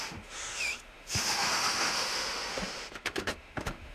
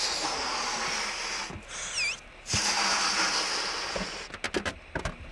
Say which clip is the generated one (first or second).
first